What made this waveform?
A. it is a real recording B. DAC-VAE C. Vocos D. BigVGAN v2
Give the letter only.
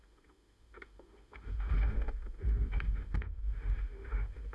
B